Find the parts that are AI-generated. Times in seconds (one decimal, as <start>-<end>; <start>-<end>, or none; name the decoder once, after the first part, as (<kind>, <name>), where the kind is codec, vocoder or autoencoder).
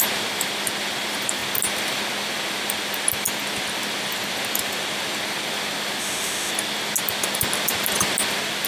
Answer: 6.0-6.5 (autoencoder, DAC-VAE)